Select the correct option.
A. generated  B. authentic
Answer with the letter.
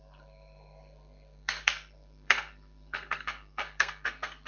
A